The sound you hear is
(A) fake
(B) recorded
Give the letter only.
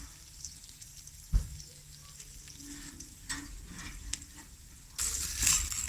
B